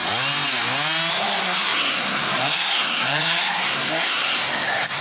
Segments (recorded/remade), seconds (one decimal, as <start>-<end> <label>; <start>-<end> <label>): 0.0-1.1 recorded; 1.1-5.0 remade